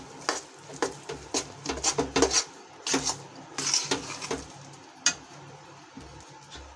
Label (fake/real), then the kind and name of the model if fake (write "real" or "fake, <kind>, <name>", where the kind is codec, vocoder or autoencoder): real